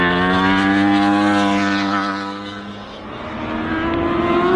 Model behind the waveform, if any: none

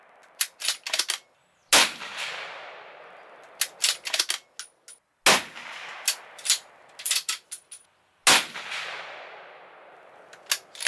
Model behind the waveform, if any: none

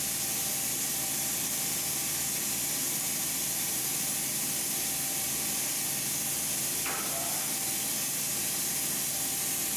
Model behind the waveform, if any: none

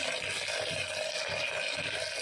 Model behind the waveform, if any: none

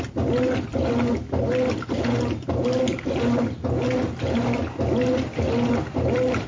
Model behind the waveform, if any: none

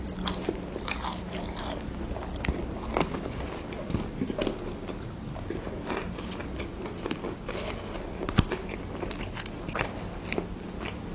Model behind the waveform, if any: none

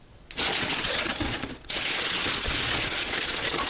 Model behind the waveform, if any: vocoder, Vocos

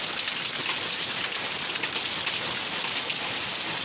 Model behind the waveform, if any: none